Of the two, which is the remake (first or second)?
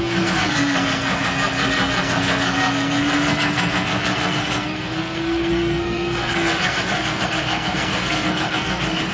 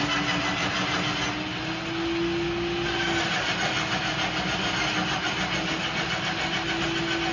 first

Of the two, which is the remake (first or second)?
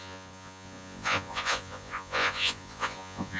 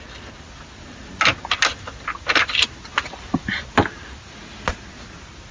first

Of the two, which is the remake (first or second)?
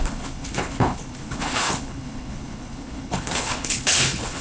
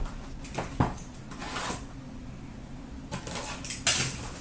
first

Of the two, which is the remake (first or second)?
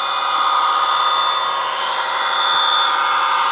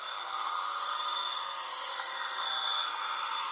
second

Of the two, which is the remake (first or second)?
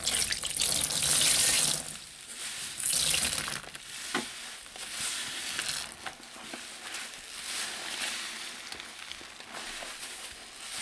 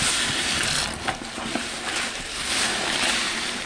second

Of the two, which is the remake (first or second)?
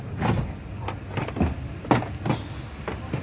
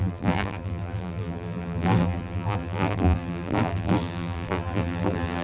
second